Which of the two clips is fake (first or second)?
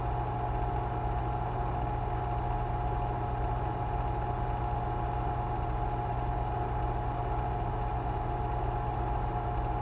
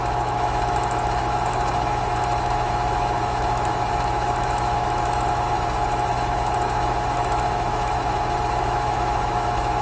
second